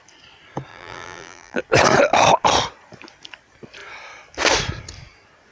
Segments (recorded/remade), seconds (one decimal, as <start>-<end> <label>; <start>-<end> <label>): 0.0-0.7 recorded; 0.7-1.6 remade; 1.6-5.5 recorded